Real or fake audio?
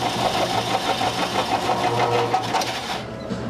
real